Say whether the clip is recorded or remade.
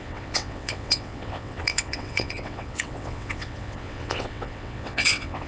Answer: remade